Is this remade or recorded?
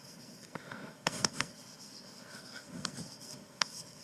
remade